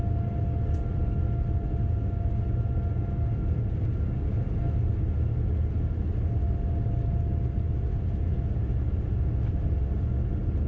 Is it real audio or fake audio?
real